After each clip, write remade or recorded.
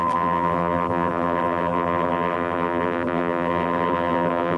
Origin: remade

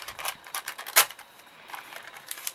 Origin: remade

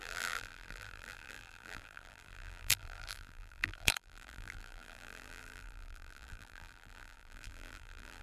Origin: remade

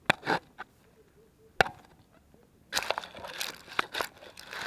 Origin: recorded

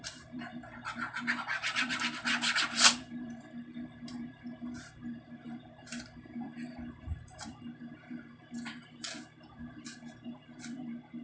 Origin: remade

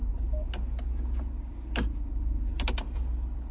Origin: recorded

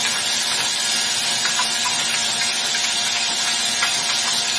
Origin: recorded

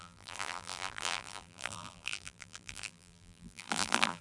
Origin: remade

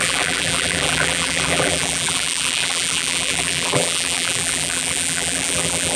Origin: remade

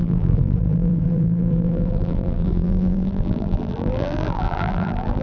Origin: remade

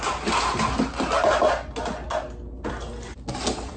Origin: recorded